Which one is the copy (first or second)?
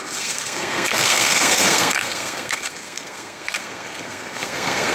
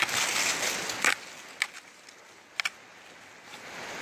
first